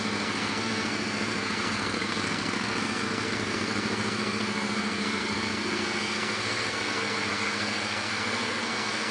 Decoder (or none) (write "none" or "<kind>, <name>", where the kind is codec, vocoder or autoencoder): codec, SNAC